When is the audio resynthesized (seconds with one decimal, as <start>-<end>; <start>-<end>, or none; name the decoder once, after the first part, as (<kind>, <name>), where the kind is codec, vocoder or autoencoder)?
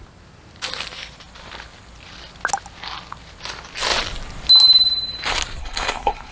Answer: 5.6-6.3 (codec, HILCodec)